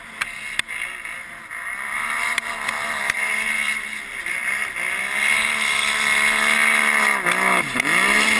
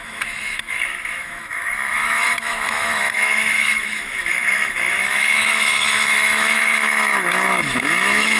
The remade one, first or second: second